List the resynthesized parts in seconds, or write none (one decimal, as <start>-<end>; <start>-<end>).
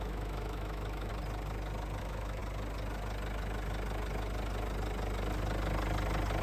0.0-1.1; 2.0-2.4